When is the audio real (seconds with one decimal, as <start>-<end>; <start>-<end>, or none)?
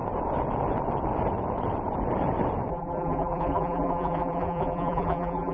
0.0-2.7